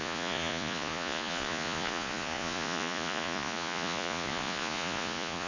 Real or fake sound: fake